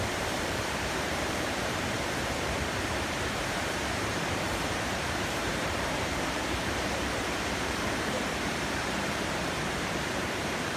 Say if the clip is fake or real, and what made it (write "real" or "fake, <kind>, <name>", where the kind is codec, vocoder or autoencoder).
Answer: fake, vocoder, BigVGAN v2